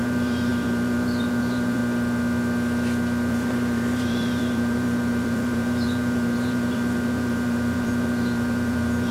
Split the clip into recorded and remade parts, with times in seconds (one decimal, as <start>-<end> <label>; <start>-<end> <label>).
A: 0.0-1.8 remade; 1.8-3.3 recorded; 3.3-9.1 remade